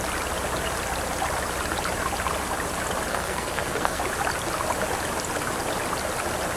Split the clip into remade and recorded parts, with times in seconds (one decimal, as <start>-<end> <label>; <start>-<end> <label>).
0.0-3.1 recorded; 3.1-4.0 remade; 4.0-6.6 recorded